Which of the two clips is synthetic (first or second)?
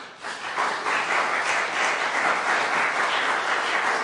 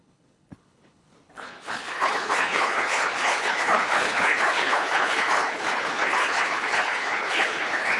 second